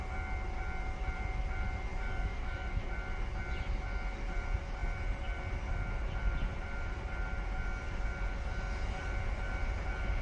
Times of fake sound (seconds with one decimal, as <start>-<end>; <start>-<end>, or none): 1.9-2.8

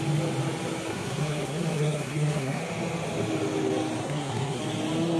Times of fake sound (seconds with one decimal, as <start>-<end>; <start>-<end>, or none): 0.9-2.6; 4.0-4.6